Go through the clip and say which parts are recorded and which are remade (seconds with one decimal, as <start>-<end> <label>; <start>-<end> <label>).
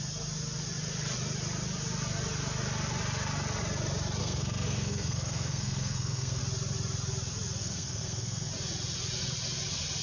0.0-4.2 recorded; 4.2-6.4 remade; 6.4-7.6 recorded; 7.6-8.5 remade; 8.5-10.0 recorded